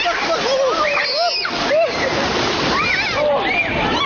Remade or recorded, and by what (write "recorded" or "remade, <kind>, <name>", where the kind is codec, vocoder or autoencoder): recorded